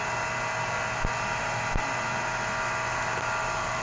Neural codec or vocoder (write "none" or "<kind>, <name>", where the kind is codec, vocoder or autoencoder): none